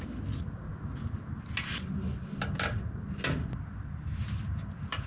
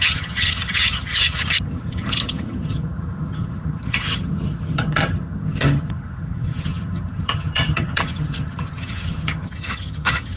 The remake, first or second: second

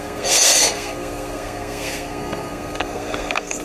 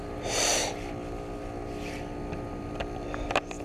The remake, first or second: first